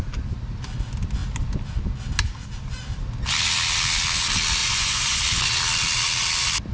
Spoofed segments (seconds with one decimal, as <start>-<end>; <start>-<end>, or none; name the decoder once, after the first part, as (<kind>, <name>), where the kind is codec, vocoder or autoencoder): 4.6-5.2 (vocoder, Vocos)

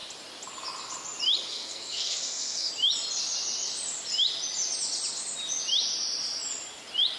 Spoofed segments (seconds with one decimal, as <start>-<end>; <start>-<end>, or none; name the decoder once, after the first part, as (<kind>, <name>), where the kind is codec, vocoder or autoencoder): 1.5-2.7 (codec, SNAC)

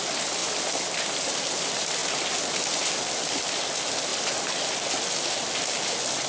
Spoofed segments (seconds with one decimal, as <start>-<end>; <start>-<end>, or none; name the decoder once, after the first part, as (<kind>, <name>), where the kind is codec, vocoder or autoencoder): none